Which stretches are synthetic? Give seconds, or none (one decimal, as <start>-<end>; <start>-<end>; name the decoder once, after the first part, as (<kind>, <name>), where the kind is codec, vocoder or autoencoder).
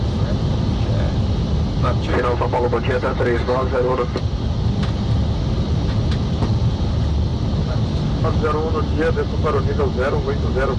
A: none